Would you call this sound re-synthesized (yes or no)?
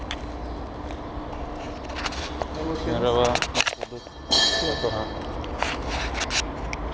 no